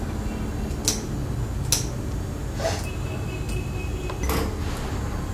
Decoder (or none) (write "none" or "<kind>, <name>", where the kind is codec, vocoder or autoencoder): none